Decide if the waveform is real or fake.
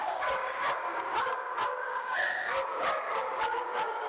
fake